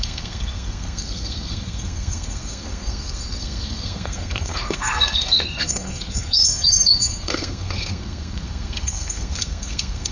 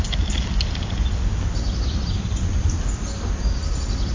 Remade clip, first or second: first